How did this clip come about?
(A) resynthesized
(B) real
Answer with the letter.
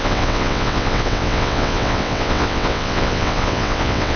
A